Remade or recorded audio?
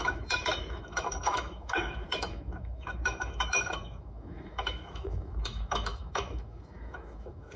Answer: remade